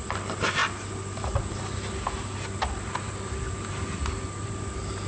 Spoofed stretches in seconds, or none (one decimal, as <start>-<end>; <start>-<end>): none

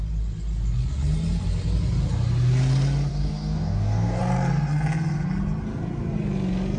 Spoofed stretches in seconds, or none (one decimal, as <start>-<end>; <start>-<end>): 3.1-4.2

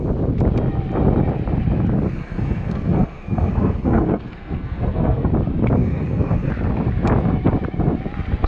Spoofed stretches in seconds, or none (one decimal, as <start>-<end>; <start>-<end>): 2.2-5.3; 5.8-6.5

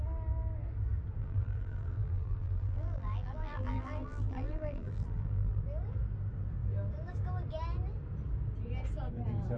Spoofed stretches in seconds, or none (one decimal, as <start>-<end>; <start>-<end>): 1.2-5.6

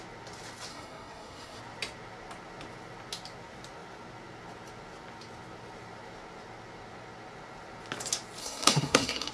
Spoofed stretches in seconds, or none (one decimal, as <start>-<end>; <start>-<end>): 0.7-1.6; 8.4-9.3

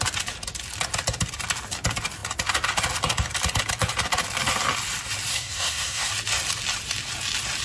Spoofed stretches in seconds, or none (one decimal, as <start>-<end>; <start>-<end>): 5.3-6.1